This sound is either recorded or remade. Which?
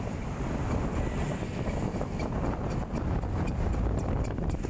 recorded